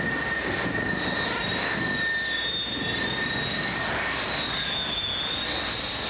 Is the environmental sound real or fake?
real